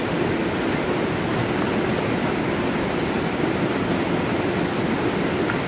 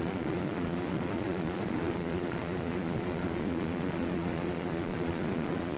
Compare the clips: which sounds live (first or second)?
first